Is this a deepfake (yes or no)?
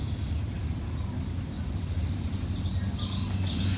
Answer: no